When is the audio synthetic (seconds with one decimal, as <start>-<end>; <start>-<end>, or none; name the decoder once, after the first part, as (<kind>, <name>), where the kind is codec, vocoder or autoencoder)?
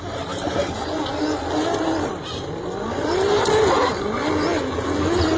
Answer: none